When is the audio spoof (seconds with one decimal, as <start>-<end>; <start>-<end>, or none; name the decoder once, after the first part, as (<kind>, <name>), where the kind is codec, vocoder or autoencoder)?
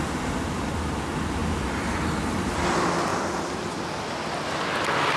1.4-1.9 (vocoder, BigVGAN v2)